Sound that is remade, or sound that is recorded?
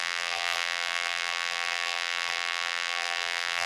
remade